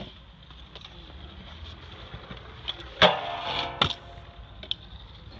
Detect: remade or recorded recorded